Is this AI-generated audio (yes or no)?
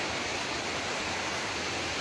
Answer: no